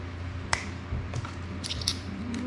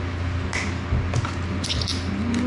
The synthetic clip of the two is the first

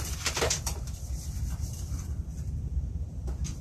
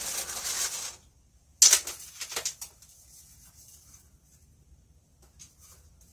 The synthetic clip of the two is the first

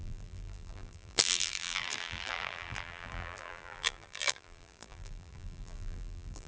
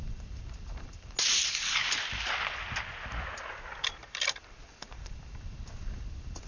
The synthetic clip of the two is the first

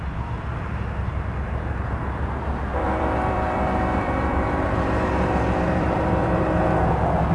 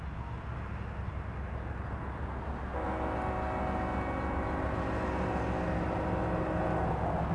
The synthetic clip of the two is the first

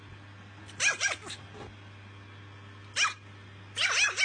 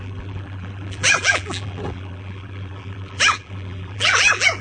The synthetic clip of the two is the second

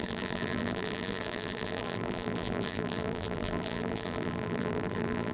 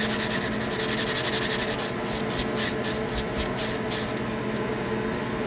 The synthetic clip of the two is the first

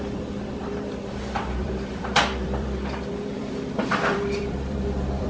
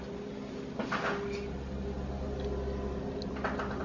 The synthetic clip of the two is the first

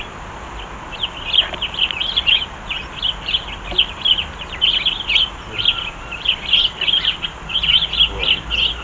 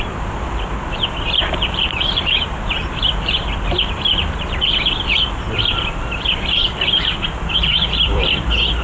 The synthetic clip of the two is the second